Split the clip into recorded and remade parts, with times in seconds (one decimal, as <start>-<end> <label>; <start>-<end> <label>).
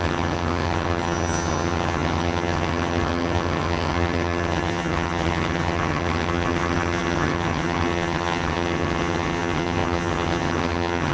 0.0-11.1 remade